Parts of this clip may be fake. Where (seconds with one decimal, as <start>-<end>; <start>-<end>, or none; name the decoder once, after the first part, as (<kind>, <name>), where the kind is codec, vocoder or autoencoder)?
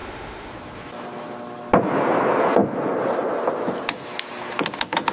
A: 0.0-0.5 (autoencoder, DAC-VAE)